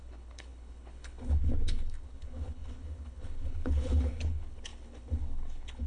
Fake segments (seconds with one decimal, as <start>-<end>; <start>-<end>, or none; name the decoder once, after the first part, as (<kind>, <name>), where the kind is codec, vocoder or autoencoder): 0.0-5.9 (codec, HILCodec)